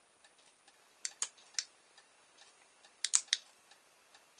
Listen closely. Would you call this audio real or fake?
fake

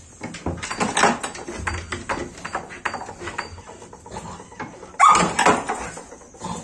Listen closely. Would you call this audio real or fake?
real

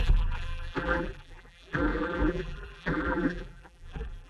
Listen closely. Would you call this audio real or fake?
fake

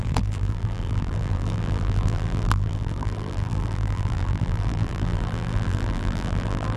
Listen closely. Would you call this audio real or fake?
fake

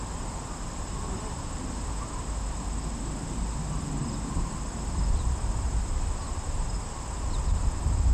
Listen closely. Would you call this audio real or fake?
real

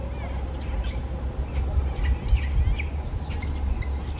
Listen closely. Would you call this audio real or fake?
real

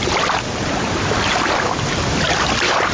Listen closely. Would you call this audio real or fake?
real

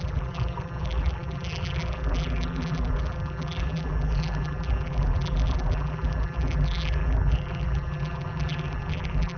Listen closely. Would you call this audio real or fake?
fake